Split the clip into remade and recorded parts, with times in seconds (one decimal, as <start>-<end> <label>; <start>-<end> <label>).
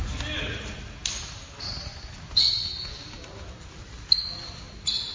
0.0-5.1 recorded